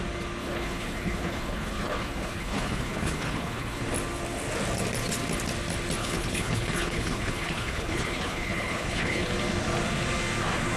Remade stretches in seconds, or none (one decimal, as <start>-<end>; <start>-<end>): 0.4-3.8; 6.0-9.3